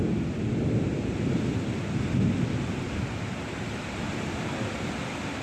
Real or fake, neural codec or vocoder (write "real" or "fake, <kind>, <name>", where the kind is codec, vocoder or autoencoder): real